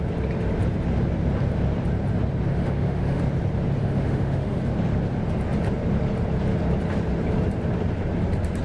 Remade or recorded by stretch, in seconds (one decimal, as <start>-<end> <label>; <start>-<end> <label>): 0.0-2.5 recorded; 2.5-3.2 remade; 3.2-3.8 recorded; 3.8-4.6 remade; 4.6-8.6 recorded